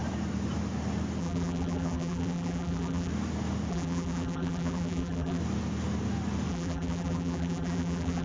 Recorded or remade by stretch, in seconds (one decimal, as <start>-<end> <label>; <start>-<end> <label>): 0.0-1.2 recorded; 1.2-3.1 remade; 3.1-3.7 recorded; 3.7-5.4 remade; 5.4-6.5 recorded; 6.5-8.2 remade